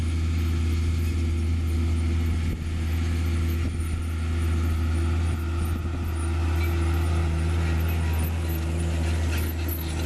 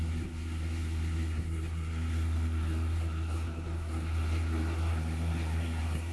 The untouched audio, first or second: first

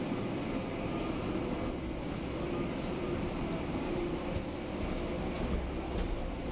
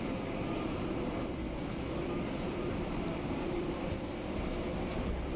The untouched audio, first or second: first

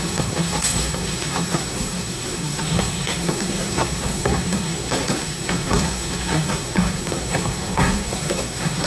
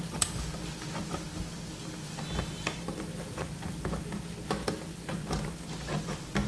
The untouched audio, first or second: second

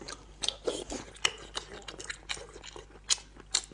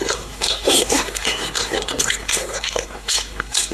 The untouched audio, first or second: first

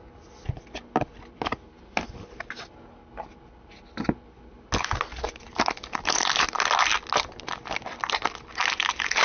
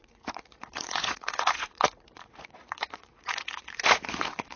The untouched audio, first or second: first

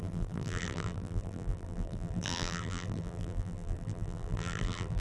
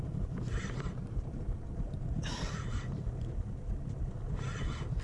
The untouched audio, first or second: second